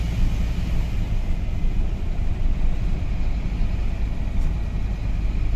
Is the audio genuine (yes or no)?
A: yes